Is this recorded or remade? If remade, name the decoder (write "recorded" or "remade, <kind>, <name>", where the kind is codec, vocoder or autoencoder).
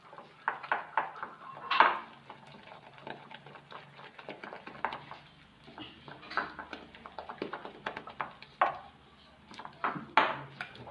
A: recorded